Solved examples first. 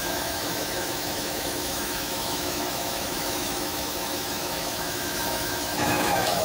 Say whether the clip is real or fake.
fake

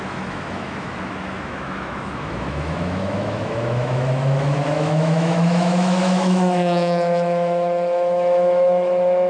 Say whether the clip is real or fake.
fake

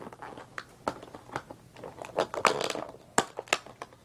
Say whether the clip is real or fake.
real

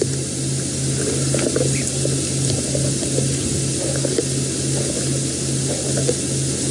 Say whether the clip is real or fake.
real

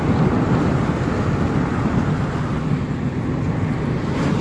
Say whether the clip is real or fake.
real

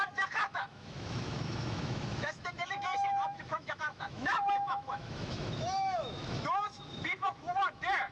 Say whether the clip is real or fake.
fake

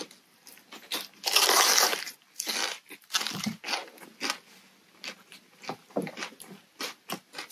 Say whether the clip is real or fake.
real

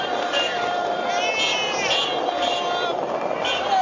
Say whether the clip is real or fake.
real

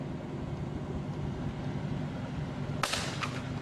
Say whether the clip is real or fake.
real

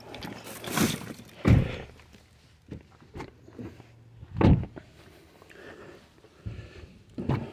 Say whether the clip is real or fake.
real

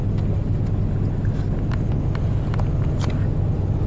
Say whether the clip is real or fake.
real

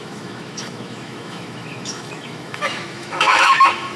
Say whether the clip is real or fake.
fake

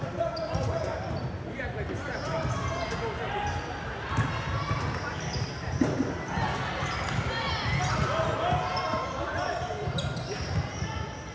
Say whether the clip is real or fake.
real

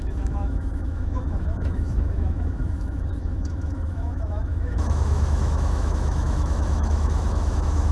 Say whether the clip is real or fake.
fake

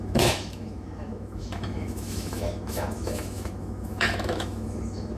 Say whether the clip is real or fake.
fake